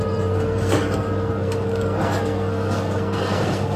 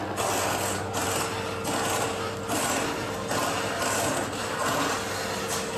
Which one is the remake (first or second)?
first